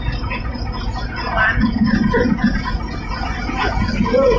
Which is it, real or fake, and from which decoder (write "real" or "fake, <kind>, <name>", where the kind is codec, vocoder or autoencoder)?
fake, vocoder, Vocos